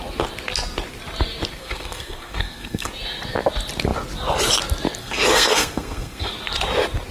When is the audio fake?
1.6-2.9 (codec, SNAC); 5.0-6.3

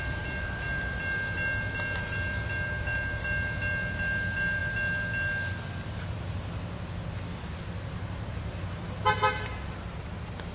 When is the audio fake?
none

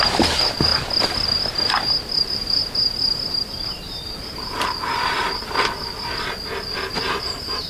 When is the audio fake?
0.0-0.7 (vocoder, BigVGAN v2); 2.2-2.6; 7.2-7.7

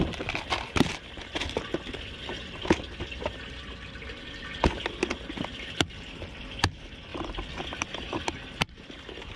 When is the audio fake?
0.0-4.0 (vocoder, BigVGAN v2); 5.8-9.4

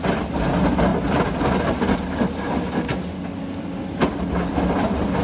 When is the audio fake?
none

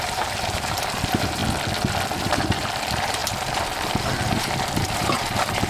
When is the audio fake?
0.0-1.4 (vocoder, BigVGAN v2); 2.2-5.7

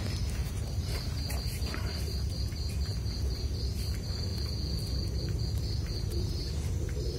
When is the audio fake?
0.4-0.9 (vocoder, BigVGAN v2)

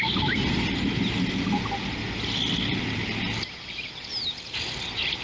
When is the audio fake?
none